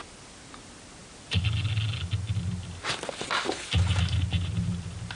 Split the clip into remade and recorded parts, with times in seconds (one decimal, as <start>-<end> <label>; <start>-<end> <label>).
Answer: 0.0-5.2 recorded